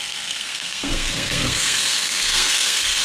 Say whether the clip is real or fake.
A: fake